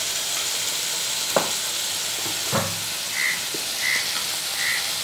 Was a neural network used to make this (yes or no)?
no